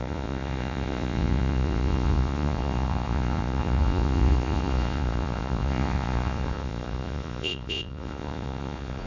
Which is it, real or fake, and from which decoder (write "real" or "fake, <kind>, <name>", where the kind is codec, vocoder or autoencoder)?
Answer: fake, vocoder, Vocos